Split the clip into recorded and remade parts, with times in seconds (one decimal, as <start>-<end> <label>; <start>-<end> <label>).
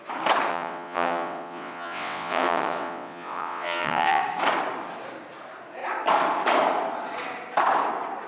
0.0-0.5 recorded; 0.5-4.2 remade; 4.2-8.3 recorded